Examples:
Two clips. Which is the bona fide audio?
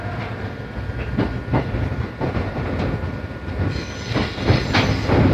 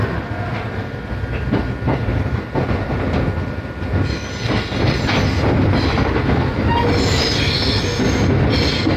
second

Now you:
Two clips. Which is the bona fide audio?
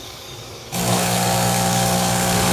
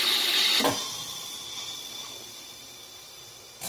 second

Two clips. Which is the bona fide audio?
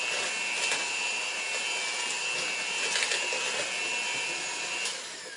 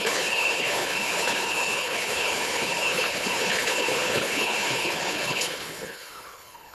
first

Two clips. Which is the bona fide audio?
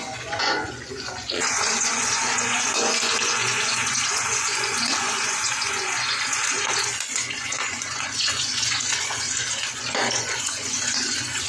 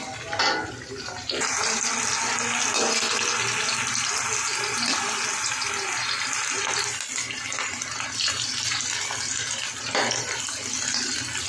second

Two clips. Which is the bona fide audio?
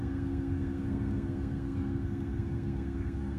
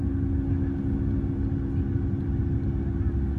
second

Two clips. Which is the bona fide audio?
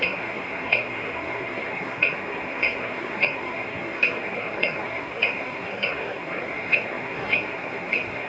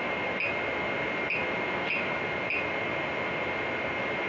second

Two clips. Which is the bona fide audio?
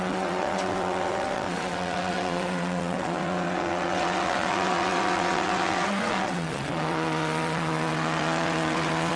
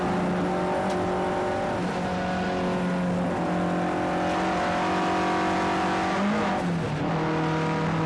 second